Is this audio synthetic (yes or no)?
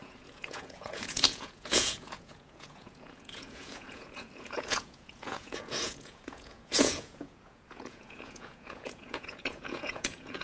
yes